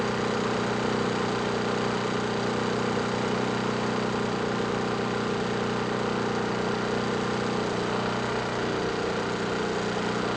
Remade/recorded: recorded